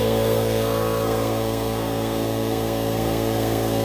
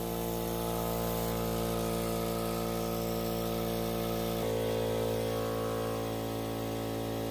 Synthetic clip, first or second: first